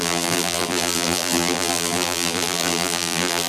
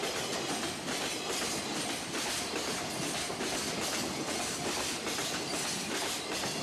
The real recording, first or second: second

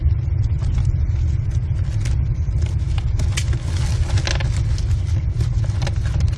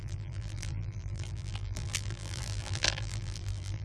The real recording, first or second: first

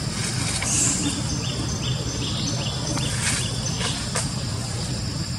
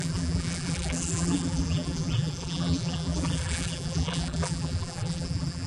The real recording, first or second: first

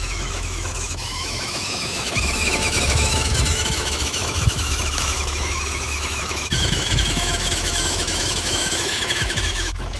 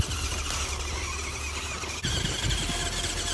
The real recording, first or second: second